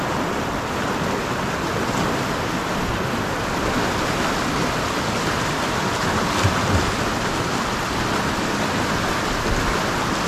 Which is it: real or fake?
real